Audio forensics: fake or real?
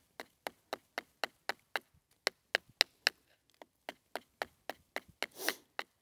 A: real